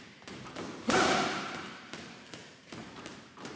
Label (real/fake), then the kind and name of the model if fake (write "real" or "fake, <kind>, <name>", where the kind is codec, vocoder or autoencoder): fake, vocoder, BigVGAN v2